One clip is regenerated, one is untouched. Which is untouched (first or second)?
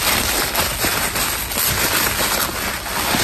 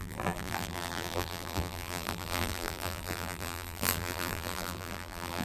first